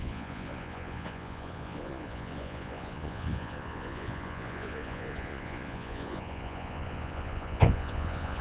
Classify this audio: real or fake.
fake